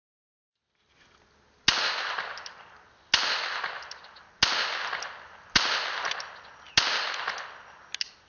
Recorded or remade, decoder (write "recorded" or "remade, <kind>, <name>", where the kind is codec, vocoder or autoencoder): recorded